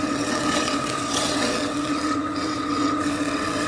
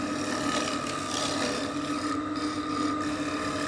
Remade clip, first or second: first